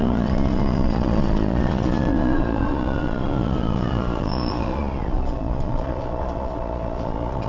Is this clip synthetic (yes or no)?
yes